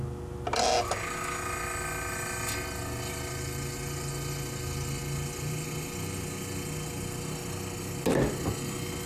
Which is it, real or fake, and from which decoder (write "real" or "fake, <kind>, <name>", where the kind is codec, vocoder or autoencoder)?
real